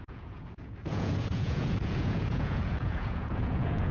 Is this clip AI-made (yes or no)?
yes